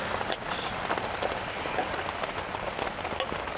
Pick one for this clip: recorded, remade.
recorded